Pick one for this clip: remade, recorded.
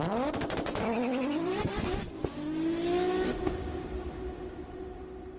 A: recorded